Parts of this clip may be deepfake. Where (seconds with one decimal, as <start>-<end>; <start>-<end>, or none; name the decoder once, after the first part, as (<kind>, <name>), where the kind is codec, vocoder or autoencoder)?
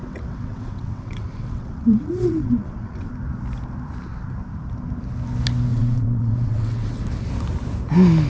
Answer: 0.0-3.1 (vocoder, WaveNeXt); 5.7-7.0